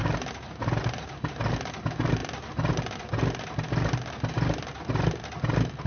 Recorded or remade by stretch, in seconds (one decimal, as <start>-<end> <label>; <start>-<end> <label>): 0.0-5.9 recorded